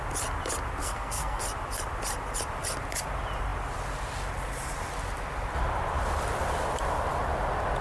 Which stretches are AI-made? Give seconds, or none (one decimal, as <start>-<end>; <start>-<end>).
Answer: 0.8-1.4

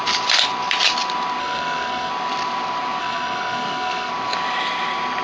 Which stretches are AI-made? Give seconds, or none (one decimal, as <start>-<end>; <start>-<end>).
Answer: 1.4-2.1; 3.0-4.1

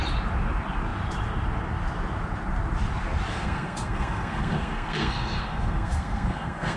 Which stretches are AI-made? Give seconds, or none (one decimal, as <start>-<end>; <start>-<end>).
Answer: 3.3-6.8

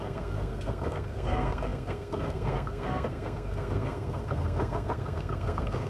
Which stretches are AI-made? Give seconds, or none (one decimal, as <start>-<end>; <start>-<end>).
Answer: 0.0-5.9

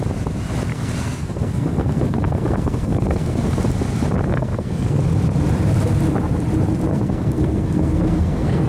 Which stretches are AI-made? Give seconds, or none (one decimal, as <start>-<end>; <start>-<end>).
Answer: 0.7-3.6; 4.3-5.0; 6.9-8.7

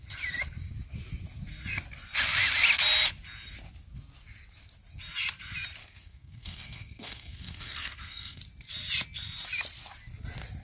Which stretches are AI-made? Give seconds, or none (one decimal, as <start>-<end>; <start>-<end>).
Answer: 5.8-8.4

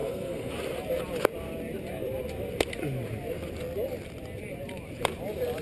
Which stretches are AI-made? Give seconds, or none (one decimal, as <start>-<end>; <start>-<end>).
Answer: 0.0-0.5

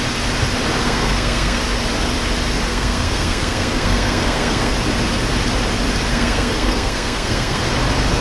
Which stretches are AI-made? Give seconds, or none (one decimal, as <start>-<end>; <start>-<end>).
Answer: 0.8-1.6; 2.7-4.7; 6.1-7.6